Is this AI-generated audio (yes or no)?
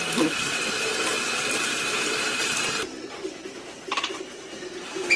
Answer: yes